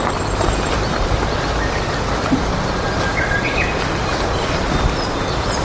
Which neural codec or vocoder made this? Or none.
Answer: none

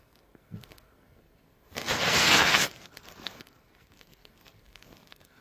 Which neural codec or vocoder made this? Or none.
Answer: codec, SNAC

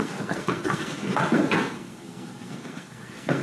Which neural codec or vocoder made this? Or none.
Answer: codec, SNAC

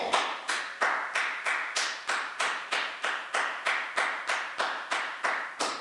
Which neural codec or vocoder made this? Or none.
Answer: none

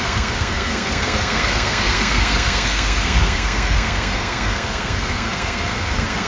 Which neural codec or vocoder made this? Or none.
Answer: codec, SNAC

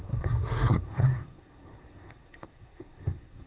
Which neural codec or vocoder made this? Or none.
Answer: codec, SNAC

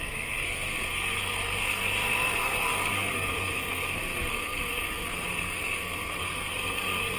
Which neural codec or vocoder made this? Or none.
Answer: codec, SNAC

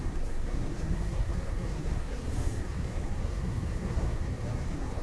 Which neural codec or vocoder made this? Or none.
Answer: codec, SNAC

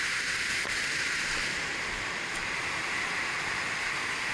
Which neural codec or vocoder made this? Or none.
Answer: none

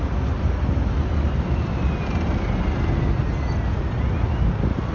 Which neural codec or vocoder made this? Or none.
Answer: none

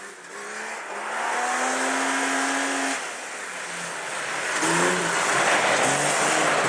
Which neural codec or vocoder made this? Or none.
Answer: none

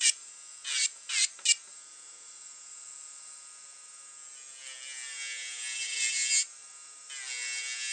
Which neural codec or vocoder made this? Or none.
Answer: none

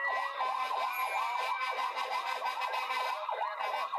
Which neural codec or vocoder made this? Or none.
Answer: none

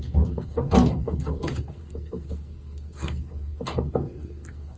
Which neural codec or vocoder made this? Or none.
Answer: codec, SNAC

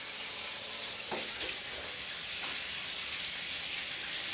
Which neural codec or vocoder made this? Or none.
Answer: none